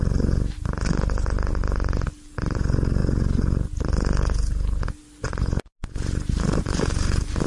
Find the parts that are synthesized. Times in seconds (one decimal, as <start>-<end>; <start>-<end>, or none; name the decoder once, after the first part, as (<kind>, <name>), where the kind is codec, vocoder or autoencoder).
none